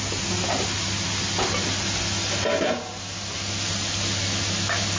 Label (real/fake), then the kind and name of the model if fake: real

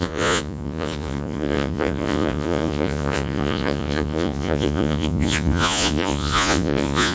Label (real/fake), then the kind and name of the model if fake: fake, vocoder, Vocos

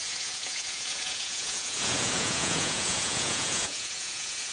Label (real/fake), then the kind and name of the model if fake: fake, vocoder, Vocos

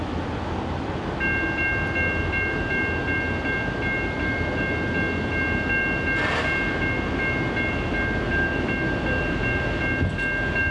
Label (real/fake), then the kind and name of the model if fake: real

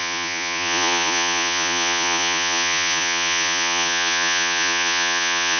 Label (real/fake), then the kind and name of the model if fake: fake, vocoder, Vocos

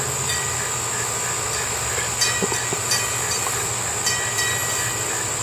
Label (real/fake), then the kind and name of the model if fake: real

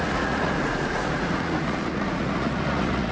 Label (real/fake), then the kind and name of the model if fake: fake, vocoder, Vocos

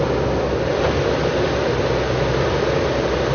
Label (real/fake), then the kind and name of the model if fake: real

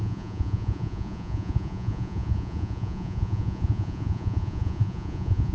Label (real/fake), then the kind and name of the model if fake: fake, vocoder, Vocos